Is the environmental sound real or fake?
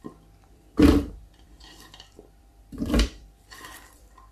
fake